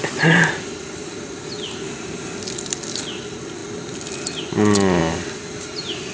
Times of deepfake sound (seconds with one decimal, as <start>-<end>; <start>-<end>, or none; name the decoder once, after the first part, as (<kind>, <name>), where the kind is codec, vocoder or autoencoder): none